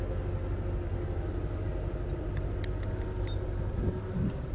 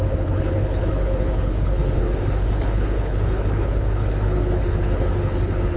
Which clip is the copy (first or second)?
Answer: second